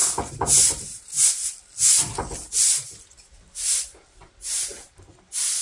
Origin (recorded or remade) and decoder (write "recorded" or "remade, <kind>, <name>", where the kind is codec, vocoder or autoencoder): recorded